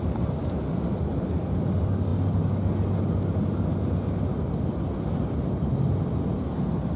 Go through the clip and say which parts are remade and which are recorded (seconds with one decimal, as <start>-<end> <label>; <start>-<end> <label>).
0.0-7.0 recorded